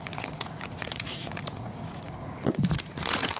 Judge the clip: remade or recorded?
remade